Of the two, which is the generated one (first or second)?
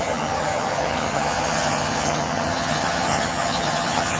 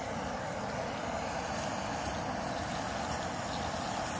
first